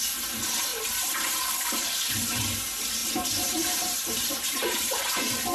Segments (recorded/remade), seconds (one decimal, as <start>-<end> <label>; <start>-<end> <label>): 0.0-0.7 recorded; 0.7-1.4 remade; 1.4-3.0 recorded; 3.0-5.0 remade; 5.0-5.5 recorded